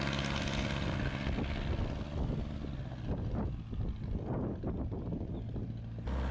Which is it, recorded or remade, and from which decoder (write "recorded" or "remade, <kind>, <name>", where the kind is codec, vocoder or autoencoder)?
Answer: recorded